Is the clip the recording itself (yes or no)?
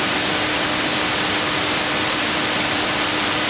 yes